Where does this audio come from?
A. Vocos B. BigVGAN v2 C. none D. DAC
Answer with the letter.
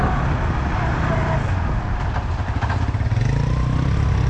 C